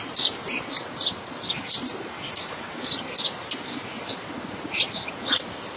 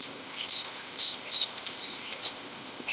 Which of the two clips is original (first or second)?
first